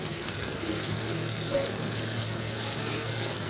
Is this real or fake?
fake